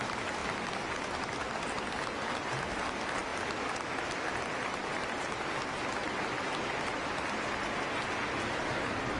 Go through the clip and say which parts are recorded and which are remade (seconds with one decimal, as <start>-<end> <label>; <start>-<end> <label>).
0.0-9.2 recorded